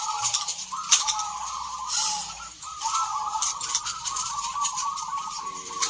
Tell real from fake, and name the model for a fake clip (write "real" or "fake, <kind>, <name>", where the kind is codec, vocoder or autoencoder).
fake, vocoder, BigVGAN v2